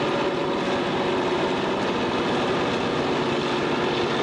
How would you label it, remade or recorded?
recorded